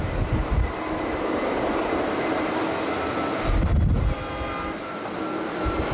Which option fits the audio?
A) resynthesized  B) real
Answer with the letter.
B